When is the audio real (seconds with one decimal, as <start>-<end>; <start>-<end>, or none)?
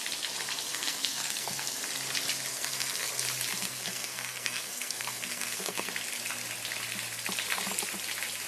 0.0-0.7; 1.8-2.5; 3.1-3.5; 5.9-8.5